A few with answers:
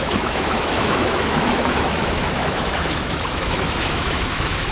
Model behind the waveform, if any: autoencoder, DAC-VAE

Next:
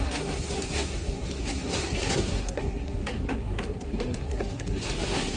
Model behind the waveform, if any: codec, SNAC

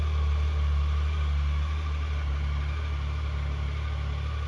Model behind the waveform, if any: none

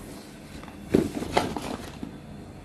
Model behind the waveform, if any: none